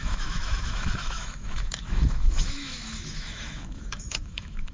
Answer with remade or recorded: remade